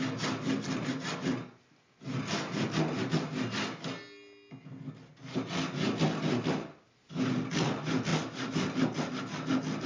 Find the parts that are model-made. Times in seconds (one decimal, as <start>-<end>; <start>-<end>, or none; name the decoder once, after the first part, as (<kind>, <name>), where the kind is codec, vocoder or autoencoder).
none